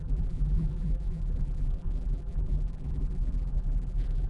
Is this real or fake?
fake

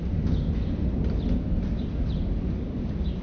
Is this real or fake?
real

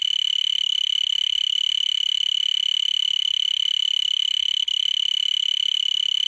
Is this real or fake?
real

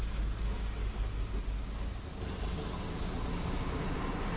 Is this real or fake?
real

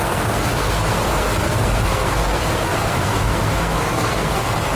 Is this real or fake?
fake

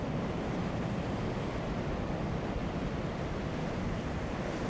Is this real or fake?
real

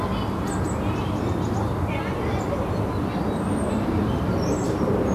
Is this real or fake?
real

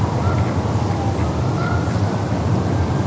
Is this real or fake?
real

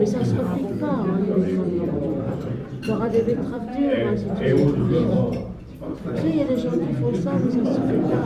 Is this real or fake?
fake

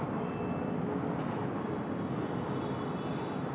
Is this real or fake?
real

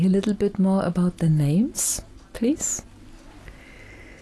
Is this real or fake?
real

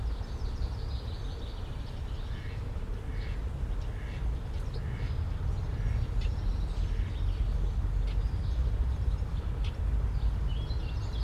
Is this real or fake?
real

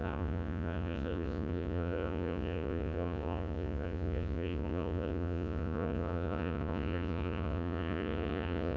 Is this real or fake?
fake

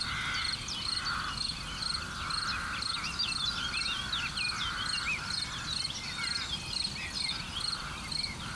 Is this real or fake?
real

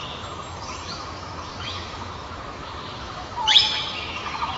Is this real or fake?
fake